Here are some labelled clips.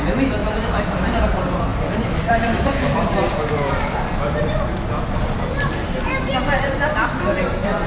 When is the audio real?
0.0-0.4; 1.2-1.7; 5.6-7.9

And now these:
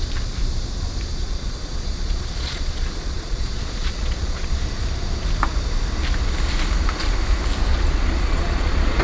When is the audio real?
0.0-1.1; 4.5-7.7

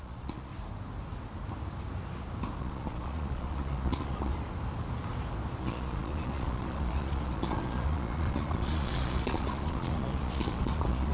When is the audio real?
0.5-2.6; 4.3-5.6

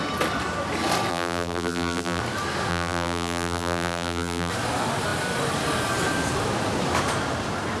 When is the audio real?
0.0-1.1; 2.2-2.7; 4.5-7.8

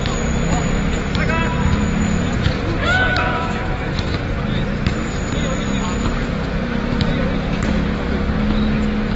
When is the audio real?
0.0-2.8; 4.2-9.2

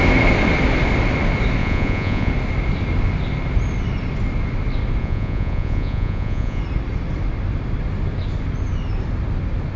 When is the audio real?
0.0-1.6; 2.3-5.0; 6.6-9.8

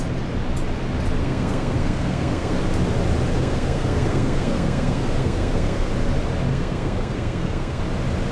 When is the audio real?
0.0-1.2; 2.6-3.3; 5.9-6.5; 7.8-8.3